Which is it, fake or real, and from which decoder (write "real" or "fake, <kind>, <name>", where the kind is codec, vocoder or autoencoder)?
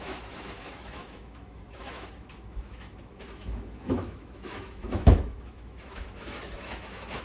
fake, autoencoder, DAC-VAE